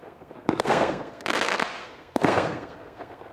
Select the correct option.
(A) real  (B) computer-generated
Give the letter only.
B